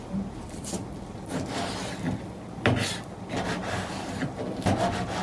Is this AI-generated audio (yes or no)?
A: no